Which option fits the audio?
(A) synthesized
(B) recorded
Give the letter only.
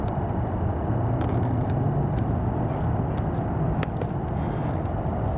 B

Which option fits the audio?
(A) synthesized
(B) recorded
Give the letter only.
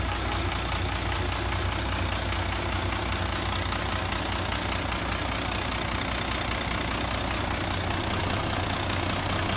B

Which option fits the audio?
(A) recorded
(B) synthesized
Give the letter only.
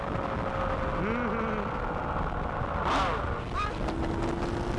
A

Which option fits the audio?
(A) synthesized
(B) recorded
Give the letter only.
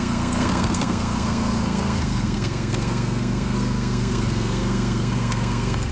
A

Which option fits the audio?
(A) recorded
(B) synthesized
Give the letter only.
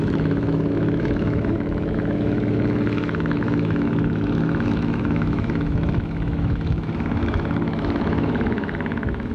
B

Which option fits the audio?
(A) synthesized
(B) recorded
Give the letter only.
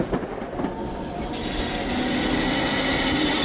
B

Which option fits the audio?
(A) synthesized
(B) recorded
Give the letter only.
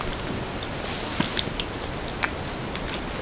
B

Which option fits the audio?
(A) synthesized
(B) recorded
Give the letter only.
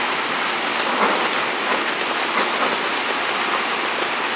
B